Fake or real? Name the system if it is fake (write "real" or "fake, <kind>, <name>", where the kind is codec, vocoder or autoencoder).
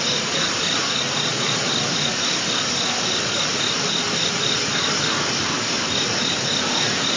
real